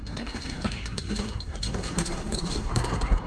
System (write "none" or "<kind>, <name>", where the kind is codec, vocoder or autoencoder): codec, SNAC